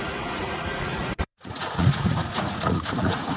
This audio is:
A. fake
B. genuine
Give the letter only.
A